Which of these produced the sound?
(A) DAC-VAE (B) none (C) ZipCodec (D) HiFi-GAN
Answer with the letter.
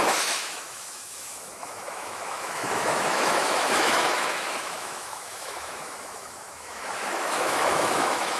A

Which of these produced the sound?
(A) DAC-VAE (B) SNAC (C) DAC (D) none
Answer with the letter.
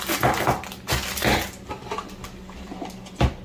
D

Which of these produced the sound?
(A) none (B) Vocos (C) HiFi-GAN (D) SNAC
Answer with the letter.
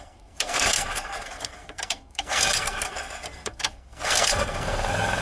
D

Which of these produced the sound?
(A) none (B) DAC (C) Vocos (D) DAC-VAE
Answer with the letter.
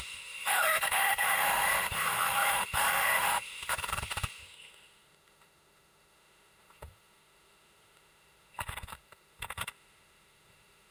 D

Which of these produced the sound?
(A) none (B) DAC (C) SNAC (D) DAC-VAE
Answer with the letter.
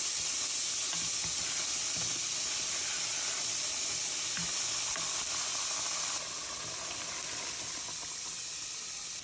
A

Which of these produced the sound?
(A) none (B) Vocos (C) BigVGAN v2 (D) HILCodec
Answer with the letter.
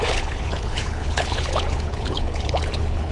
D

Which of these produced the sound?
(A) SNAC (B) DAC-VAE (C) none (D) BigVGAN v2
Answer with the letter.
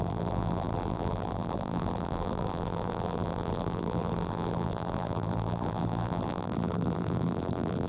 D